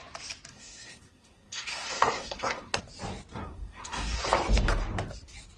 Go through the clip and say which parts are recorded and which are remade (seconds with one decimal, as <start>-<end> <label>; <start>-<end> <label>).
0.0-0.5 recorded; 0.5-2.8 remade; 2.8-3.3 recorded; 3.3-4.2 remade; 4.2-5.6 recorded